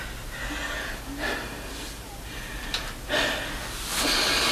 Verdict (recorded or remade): recorded